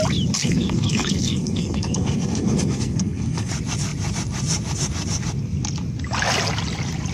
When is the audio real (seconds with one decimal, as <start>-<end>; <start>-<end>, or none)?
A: 0.0-0.4; 3.5-7.1